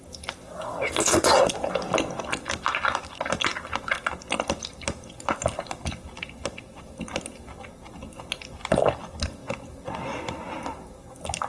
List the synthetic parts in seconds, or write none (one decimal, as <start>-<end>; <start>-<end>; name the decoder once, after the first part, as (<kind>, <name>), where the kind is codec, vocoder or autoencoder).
none